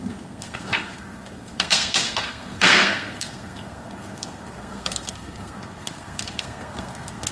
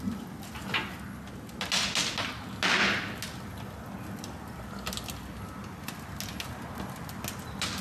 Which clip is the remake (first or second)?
first